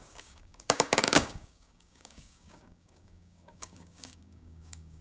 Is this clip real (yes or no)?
no